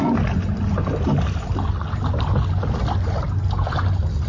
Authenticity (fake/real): real